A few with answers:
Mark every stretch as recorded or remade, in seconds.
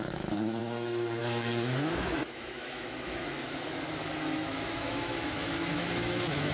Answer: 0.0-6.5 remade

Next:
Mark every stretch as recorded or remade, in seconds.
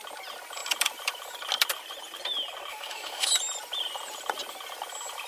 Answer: 0.0-2.7 recorded; 2.7-3.3 remade; 3.3-5.3 recorded